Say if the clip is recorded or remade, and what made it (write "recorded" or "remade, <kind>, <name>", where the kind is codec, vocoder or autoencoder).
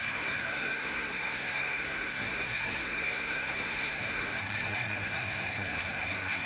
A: remade, codec, SNAC